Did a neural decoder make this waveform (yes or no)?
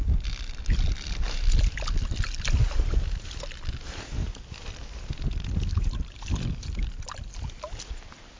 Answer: no